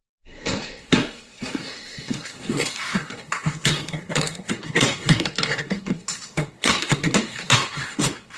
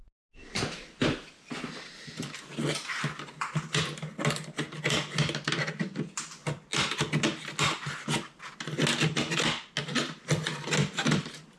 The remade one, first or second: first